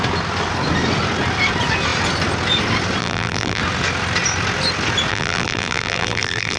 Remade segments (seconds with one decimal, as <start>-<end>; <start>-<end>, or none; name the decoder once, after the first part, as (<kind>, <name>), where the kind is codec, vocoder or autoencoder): 3.0-3.6 (vocoder, BigVGAN v2); 5.1-6.6